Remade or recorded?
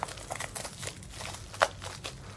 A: recorded